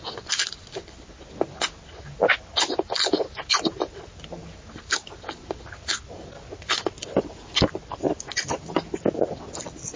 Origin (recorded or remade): recorded